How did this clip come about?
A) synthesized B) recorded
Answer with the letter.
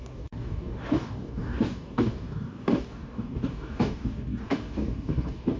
A